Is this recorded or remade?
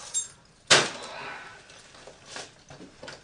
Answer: recorded